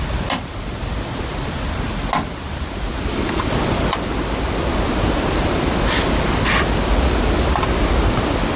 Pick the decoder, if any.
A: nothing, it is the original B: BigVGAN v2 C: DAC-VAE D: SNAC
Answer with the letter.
A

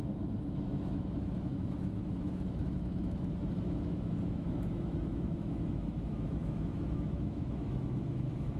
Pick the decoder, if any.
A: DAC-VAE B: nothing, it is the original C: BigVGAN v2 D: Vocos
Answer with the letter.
A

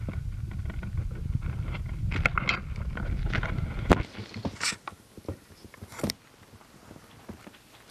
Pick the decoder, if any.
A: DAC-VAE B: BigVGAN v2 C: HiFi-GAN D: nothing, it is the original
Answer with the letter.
D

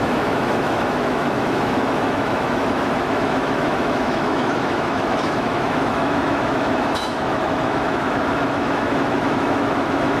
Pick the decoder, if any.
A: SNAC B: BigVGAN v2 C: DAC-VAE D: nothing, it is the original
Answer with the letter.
C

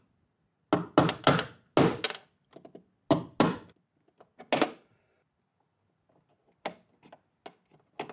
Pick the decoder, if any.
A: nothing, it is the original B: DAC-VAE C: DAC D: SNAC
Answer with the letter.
A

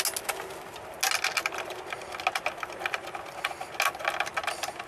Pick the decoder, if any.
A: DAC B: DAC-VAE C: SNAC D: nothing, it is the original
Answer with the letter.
D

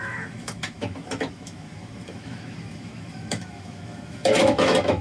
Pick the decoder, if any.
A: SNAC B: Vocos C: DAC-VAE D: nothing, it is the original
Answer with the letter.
C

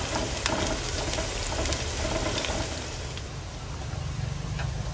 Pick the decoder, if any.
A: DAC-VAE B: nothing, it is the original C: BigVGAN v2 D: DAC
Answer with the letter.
B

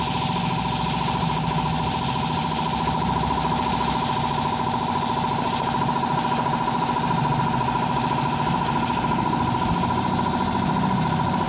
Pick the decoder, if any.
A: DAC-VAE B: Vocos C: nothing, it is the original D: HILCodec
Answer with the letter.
C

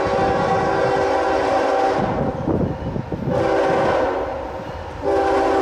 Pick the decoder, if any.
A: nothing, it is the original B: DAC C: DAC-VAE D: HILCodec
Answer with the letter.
A